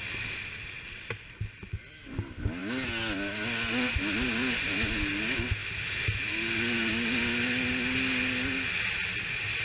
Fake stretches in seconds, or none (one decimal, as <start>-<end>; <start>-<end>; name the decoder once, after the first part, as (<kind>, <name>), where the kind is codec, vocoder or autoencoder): none